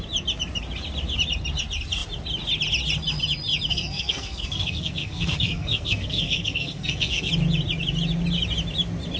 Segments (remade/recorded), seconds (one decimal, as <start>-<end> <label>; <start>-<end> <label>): 0.0-3.7 recorded; 3.7-7.3 remade; 7.3-9.2 recorded